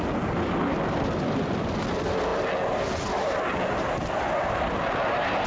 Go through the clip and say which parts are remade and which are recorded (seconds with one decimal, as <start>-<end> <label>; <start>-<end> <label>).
0.0-5.5 recorded